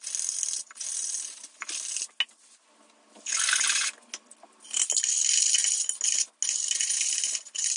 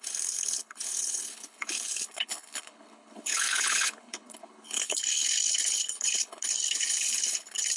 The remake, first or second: second